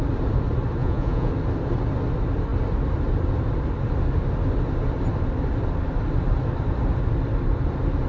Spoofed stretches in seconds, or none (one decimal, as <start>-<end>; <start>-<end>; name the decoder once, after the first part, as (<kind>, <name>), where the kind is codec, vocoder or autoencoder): 0.8-1.3 (vocoder, Vocos)